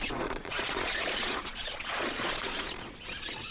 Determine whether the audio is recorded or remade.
remade